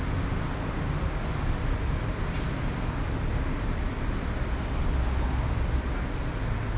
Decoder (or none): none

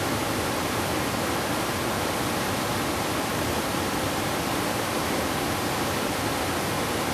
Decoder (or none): none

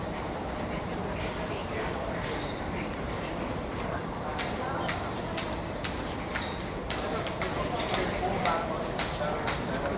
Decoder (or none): vocoder, BigVGAN v2